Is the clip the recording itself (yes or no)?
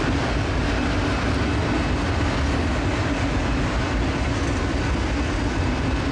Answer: yes